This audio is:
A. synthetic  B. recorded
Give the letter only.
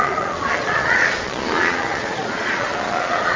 A